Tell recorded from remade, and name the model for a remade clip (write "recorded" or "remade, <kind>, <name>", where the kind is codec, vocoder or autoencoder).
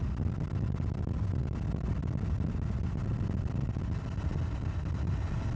recorded